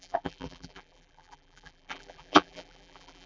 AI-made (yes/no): yes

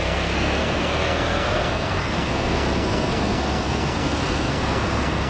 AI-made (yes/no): yes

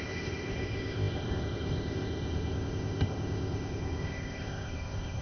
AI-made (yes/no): yes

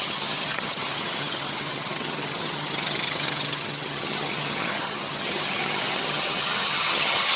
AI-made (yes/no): yes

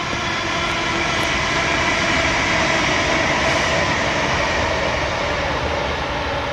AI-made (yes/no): no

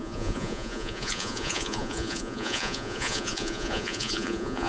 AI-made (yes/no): yes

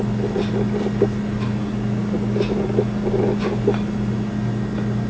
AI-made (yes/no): no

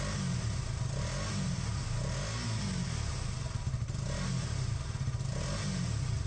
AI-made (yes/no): no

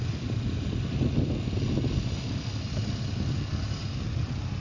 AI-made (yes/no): no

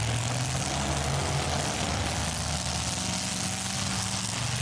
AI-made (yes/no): no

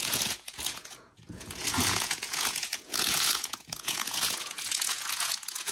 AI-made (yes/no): yes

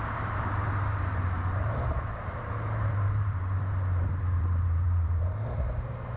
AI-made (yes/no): yes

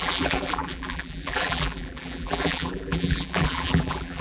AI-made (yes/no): yes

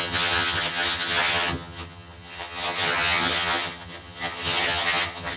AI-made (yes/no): yes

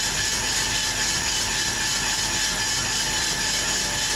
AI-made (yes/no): no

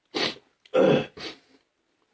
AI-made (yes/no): no